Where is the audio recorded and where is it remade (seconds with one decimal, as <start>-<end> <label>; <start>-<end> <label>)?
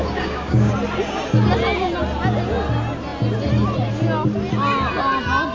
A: 0.0-0.7 remade; 0.7-5.5 recorded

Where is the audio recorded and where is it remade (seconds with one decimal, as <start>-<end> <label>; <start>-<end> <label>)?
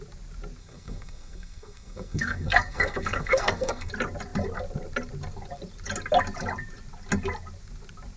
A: 0.0-0.6 recorded; 0.6-3.9 remade; 3.9-8.2 recorded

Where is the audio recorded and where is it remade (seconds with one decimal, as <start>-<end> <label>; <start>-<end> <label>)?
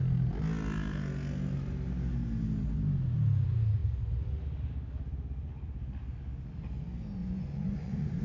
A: 0.0-7.2 recorded; 7.2-8.2 remade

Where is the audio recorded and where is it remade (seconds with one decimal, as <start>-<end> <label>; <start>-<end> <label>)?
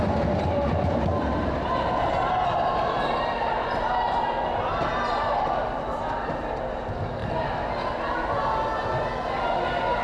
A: 0.0-10.0 recorded